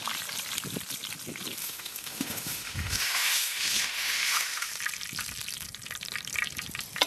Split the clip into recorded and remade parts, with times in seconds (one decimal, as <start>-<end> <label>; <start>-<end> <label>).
0.0-1.6 recorded; 1.6-4.7 remade; 4.7-7.1 recorded